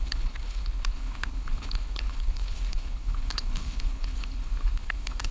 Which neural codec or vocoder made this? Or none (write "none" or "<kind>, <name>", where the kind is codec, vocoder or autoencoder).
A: codec, HILCodec